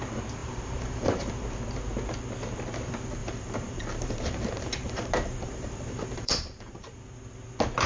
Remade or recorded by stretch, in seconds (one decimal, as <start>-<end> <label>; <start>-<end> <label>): 0.0-0.4 recorded; 0.4-1.3 remade; 1.3-3.2 recorded; 3.2-7.0 remade; 7.0-7.9 recorded

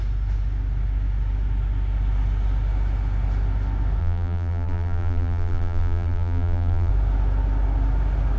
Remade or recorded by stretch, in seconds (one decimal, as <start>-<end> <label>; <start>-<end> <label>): 0.0-4.0 recorded; 4.0-6.9 remade; 6.9-8.4 recorded